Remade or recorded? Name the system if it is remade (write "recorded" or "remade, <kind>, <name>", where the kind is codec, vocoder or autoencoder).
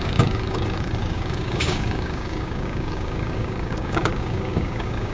remade, codec, DAC